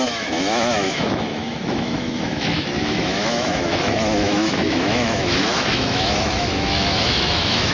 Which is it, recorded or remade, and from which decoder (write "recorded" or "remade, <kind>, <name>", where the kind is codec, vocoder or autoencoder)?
remade, autoencoder, DAC-VAE